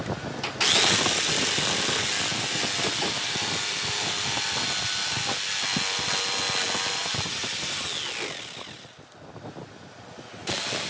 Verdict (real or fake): real